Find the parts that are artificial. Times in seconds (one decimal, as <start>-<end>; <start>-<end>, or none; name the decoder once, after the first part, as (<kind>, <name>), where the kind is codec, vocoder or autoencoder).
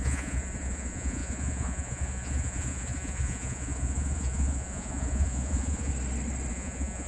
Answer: 0.0-5.9 (vocoder, Vocos); 6.5-7.1